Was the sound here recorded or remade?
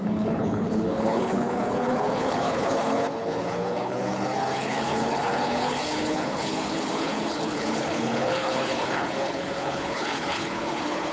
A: remade